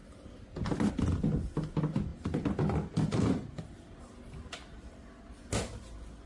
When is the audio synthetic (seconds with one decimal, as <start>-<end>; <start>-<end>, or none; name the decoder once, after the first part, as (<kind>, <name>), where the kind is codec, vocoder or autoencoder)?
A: none